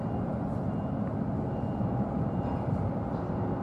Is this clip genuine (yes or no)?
yes